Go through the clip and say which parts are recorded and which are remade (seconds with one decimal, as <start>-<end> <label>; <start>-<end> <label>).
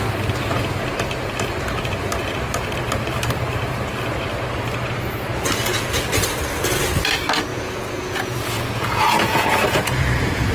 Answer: 0.0-7.5 recorded; 7.5-10.5 remade